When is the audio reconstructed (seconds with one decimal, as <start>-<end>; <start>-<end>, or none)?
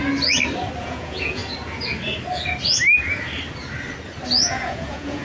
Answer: 0.8-1.4; 4.5-5.2